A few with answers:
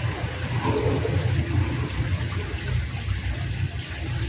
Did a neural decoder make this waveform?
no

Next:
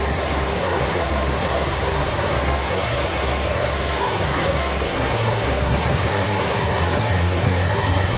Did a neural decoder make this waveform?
yes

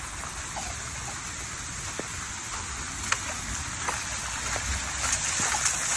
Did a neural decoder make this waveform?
no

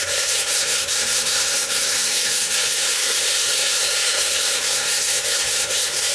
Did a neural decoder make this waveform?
yes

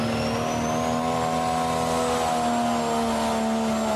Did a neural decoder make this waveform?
no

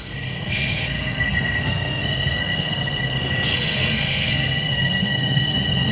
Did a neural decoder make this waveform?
yes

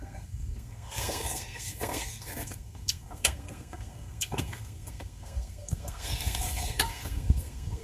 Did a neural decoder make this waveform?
yes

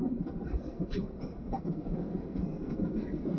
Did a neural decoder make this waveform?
yes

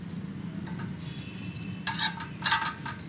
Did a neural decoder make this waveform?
no